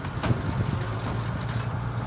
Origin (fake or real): real